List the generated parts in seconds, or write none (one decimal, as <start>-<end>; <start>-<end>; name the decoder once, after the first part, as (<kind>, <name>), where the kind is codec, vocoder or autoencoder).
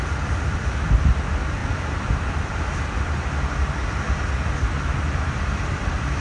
0.0-3.8 (vocoder, BigVGAN v2); 4.6-6.2